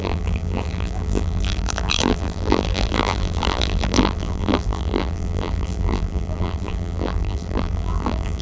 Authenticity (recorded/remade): remade